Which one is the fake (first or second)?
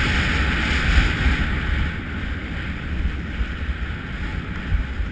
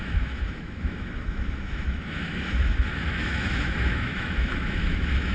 second